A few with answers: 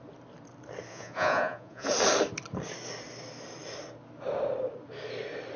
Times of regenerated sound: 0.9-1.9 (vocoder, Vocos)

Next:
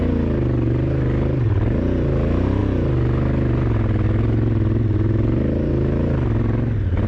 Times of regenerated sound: none

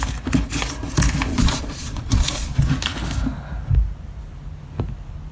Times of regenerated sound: 1.3-2.7 (vocoder, Vocos)

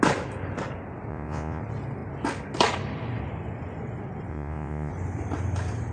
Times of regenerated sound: 1.1-1.6 (vocoder, Vocos); 4.3-4.9

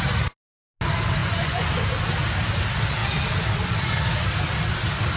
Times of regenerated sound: 1.2-1.8 (vocoder, Vocos)

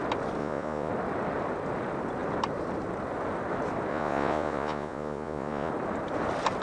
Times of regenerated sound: 0.4-0.9 (vocoder, Vocos); 3.9-5.7